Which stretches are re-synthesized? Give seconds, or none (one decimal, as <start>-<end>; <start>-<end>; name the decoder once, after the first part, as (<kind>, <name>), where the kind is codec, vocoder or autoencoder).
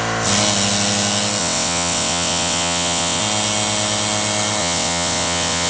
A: 1.4-3.2 (vocoder, WaveNeXt); 4.6-5.7